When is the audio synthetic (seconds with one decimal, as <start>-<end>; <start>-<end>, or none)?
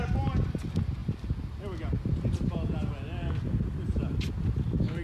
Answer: none